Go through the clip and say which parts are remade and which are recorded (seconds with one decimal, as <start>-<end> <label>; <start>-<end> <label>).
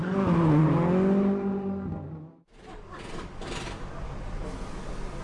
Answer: 0.0-0.6 remade; 0.6-5.2 recorded